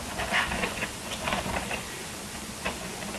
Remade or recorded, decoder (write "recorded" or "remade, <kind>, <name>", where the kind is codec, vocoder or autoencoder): remade, vocoder, Vocos